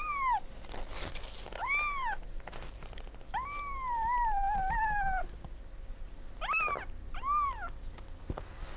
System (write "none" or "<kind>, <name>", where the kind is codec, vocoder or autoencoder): none